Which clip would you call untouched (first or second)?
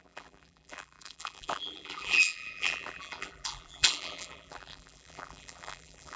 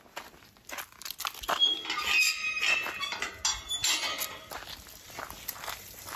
second